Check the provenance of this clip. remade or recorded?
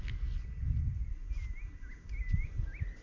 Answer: recorded